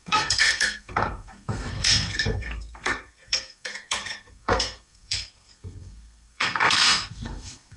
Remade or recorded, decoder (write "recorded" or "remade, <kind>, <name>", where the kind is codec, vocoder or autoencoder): remade, codec, SNAC